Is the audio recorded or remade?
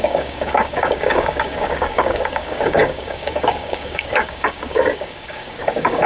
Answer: remade